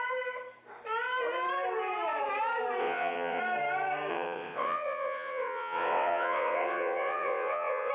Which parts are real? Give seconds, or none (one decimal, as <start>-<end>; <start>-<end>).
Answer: 0.0-2.8; 3.4-4.1